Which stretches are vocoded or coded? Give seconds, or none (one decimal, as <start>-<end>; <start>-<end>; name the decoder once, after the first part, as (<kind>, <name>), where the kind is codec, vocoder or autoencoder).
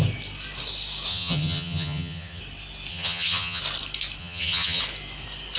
1.1-2.4 (vocoder, HiFi-GAN); 2.9-3.6; 4.2-4.8